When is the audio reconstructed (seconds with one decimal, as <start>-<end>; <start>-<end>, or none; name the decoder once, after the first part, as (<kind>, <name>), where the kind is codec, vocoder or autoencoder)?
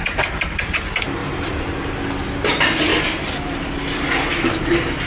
0.0-0.7 (vocoder, BigVGAN v2); 1.2-1.7